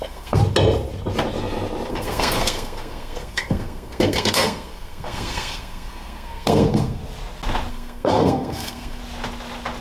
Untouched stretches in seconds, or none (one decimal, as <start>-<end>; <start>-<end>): 0.4-1.9; 7.0-7.7; 9.0-9.8